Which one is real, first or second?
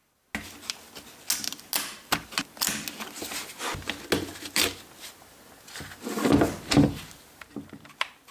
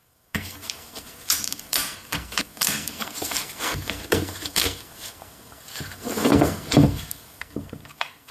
first